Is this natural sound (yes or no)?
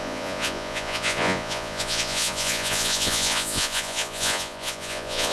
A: no